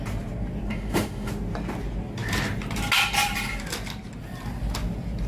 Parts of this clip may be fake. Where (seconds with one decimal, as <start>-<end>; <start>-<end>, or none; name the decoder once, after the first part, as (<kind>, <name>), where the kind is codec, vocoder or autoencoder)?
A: 0.7-1.3 (autoencoder, DAC-VAE)